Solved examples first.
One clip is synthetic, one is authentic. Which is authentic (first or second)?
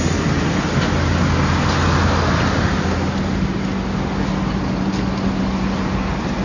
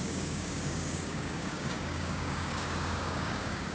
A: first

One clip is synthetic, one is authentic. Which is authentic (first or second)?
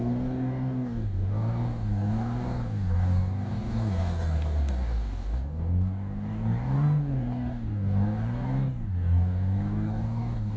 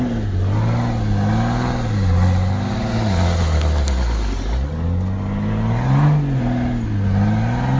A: second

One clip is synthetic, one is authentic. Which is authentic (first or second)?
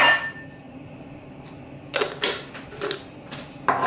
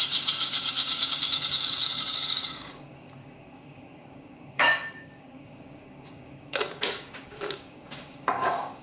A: first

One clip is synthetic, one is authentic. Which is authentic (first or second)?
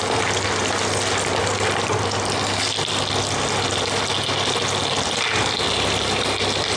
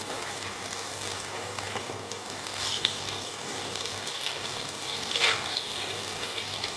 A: first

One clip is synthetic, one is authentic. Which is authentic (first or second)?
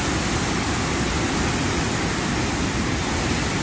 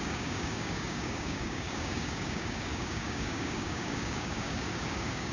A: first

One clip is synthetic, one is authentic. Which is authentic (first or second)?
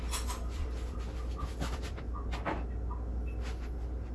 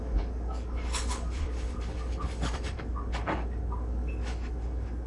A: first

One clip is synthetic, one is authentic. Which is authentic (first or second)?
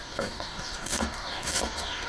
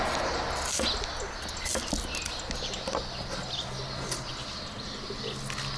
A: second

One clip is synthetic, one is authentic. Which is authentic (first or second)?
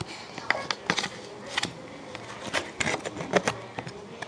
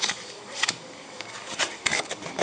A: first